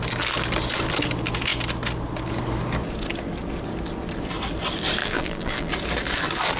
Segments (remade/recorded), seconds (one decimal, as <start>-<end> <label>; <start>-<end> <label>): 0.0-5.0 recorded; 5.0-5.7 remade; 5.7-6.6 recorded